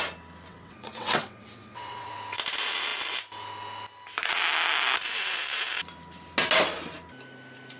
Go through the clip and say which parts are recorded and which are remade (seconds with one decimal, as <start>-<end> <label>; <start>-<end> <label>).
0.0-0.5 recorded; 0.5-2.1 remade; 2.1-7.8 recorded